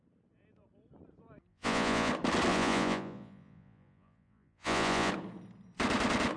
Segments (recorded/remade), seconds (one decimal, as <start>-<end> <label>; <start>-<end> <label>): 0.0-1.5 recorded; 1.5-2.1 remade; 2.1-2.5 recorded; 2.5-5.1 remade; 5.1-6.4 recorded